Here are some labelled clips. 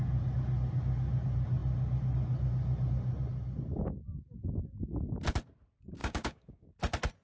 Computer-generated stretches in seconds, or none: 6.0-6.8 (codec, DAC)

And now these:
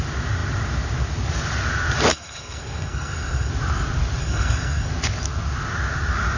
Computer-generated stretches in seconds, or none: 2.1-3.5 (codec, SNAC); 4.2-4.9

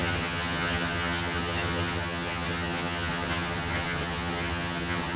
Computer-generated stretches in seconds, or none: 0.0-5.2 (vocoder, HiFi-GAN)

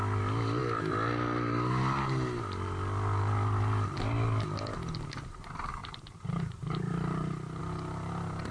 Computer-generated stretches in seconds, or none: 5.8-7.6 (vocoder, BigVGAN v2)

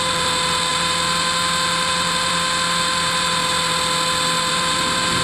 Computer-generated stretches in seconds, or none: 0.0-3.4 (vocoder, BigVGAN v2); 4.5-5.2

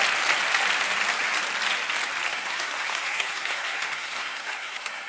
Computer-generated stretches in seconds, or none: 2.3-5.1 (codec, SNAC)

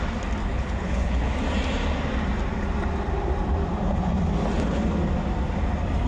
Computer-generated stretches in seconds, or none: 0.4-1.3 (codec, HILCodec)

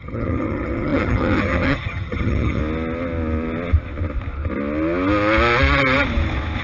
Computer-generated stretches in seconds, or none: 0.0-2.6 (vocoder, HiFi-GAN)